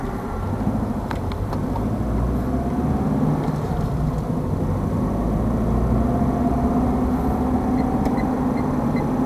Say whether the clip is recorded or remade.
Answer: recorded